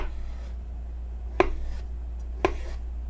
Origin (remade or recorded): recorded